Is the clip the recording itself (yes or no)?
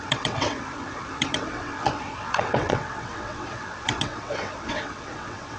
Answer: no